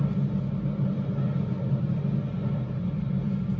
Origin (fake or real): real